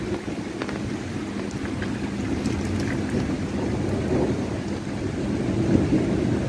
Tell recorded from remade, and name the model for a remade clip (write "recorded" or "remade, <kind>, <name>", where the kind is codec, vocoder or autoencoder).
recorded